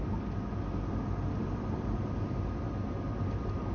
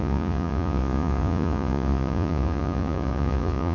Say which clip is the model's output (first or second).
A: second